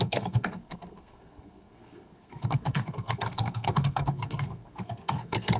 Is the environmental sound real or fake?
fake